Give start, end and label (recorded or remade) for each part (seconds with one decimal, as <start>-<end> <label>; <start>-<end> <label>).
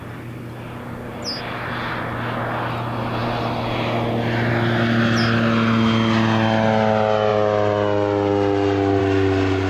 0.0-9.7 recorded